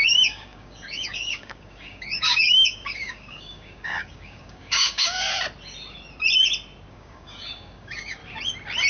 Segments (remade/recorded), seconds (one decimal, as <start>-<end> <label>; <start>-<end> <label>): 0.0-5.3 remade; 5.3-6.9 recorded; 6.9-8.2 remade; 8.2-8.9 recorded